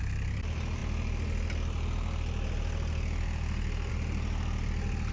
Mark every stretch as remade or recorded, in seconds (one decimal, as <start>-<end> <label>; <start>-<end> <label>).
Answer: 0.0-5.1 recorded